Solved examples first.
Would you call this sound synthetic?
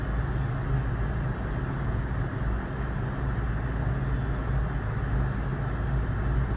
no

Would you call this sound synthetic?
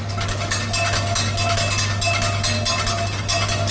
no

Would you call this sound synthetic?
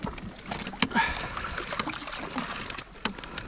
no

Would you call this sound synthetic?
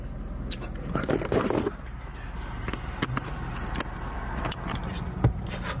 no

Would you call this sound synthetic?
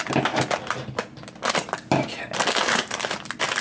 no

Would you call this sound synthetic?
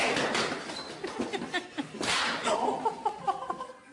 no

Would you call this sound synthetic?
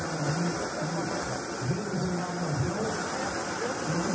yes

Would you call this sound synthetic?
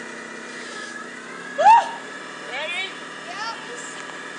no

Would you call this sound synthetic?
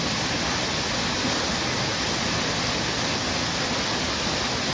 no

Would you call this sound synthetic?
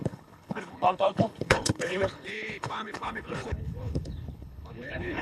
yes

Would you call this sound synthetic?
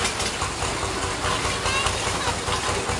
no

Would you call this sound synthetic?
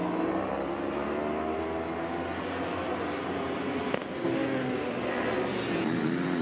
no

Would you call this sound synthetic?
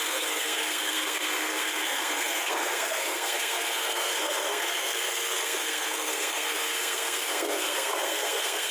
yes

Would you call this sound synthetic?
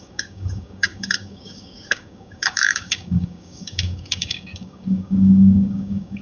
yes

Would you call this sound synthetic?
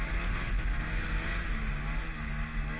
no